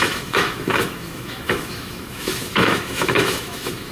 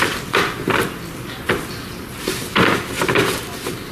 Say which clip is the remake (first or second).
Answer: first